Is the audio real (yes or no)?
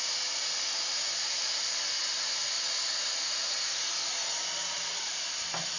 yes